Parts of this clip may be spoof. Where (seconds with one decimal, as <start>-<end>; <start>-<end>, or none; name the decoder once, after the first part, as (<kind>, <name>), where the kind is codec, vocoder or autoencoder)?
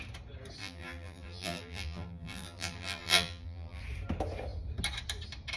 0.6-3.8 (vocoder, BigVGAN v2)